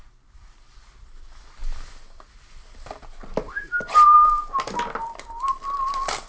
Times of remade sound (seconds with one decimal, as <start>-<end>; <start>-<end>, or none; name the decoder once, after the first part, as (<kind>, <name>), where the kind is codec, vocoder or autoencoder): none